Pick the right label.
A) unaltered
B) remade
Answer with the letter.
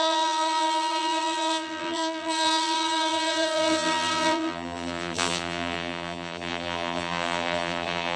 B